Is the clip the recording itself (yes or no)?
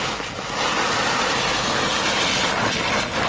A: yes